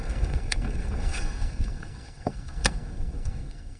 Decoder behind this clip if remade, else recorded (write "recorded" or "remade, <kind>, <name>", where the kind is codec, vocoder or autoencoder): remade, codec, SNAC